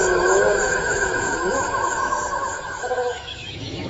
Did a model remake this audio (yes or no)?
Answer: yes